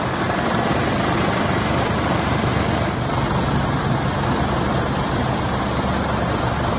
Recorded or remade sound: recorded